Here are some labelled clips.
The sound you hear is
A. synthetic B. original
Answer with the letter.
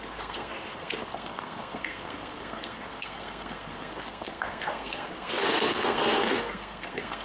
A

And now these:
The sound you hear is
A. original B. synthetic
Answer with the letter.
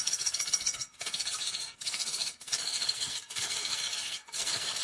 B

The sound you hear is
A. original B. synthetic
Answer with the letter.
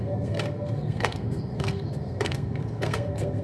B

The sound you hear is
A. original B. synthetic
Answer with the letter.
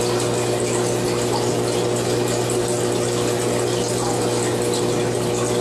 A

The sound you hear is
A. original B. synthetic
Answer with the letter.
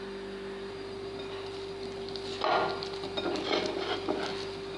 A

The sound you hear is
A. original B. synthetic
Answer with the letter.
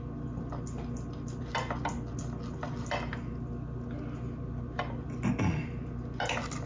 A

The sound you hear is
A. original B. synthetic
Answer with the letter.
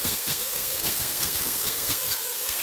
B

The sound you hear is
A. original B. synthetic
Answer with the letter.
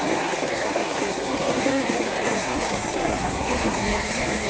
B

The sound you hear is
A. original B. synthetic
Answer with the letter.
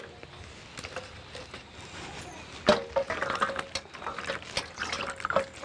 A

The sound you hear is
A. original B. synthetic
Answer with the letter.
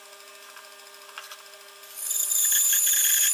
A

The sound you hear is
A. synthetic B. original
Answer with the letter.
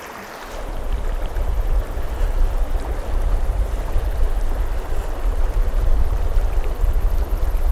B